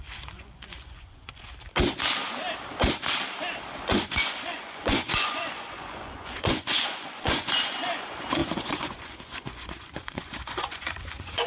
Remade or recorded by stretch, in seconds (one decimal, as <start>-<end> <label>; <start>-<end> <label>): 0.0-1.5 remade; 1.5-3.8 recorded; 3.8-11.5 remade